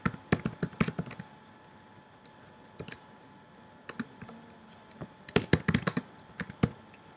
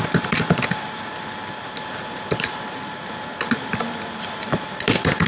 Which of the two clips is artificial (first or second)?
second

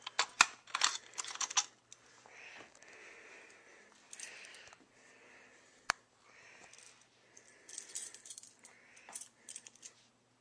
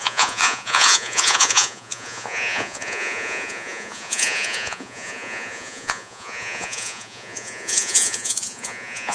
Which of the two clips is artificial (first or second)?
second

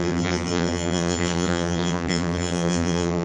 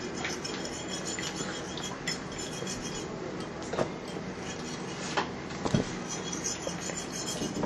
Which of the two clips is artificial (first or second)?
first